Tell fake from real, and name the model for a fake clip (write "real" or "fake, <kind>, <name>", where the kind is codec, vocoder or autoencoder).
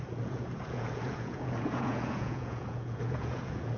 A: fake, vocoder, Vocos